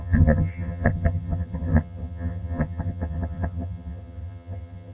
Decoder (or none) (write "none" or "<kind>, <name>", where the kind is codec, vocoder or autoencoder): vocoder, HiFi-GAN